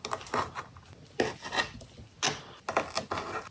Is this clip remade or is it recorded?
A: recorded